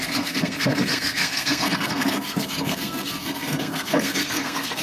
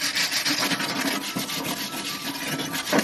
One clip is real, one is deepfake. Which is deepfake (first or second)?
first